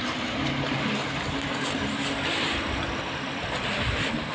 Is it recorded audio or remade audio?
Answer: recorded